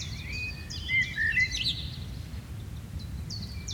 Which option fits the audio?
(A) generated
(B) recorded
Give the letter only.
B